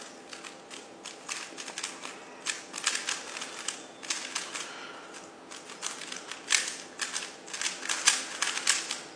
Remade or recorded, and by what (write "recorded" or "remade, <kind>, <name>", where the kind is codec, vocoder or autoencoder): recorded